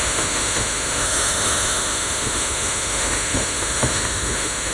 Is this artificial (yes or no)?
yes